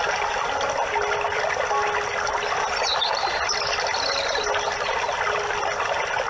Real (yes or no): yes